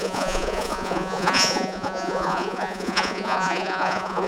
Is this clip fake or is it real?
fake